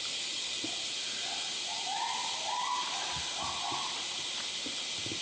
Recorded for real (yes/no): yes